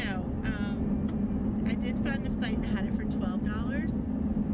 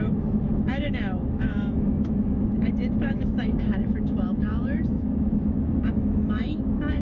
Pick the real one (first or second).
first